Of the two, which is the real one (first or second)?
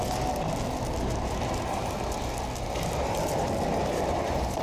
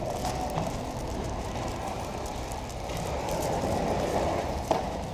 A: first